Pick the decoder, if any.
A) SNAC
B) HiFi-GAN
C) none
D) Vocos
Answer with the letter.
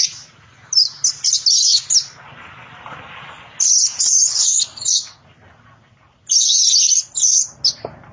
C